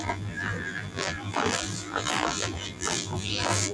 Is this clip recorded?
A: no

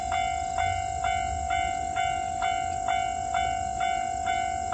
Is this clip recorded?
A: yes